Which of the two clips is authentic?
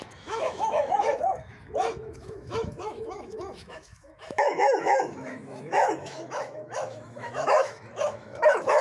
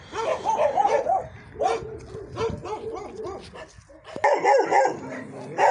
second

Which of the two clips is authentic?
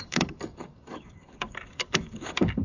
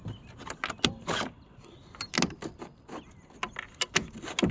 second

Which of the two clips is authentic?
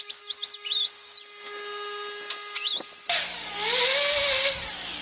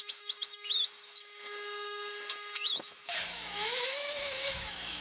first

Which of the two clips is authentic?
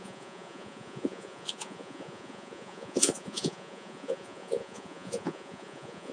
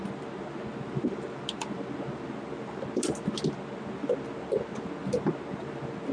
second